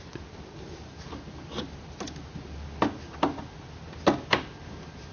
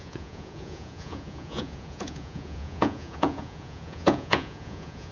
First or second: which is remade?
second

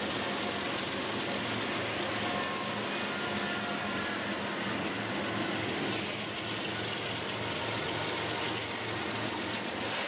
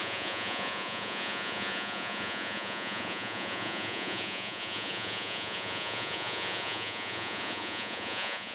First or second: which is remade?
second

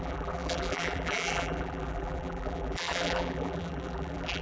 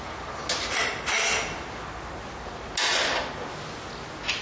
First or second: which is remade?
first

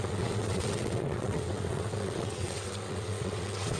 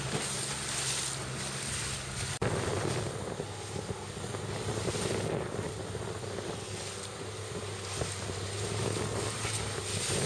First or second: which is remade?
first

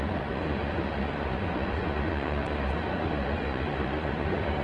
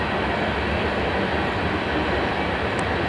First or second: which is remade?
first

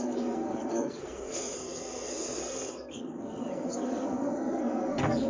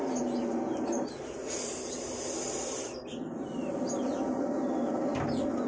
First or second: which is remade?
first